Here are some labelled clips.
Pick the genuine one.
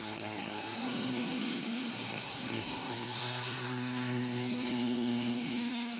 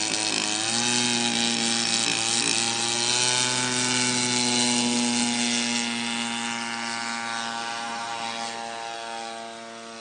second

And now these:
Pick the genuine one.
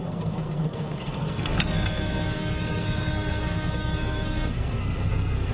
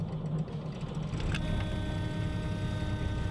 second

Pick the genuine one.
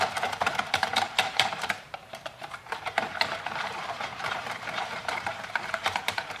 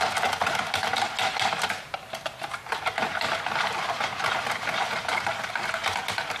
second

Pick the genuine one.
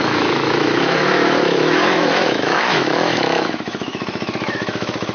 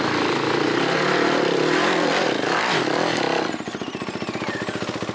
second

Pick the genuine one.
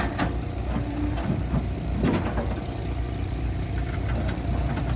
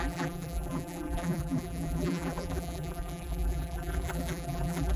first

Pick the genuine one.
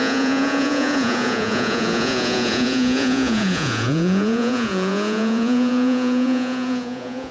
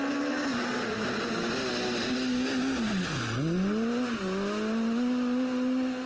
second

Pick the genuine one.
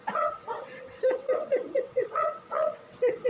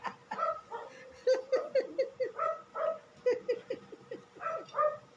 second